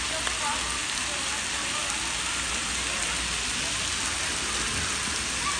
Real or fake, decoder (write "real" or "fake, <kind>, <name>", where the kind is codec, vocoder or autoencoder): real